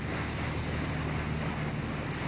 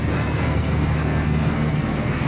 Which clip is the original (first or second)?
first